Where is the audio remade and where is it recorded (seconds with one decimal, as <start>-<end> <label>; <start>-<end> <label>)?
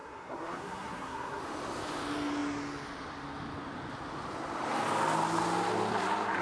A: 0.0-1.4 remade; 1.4-6.4 recorded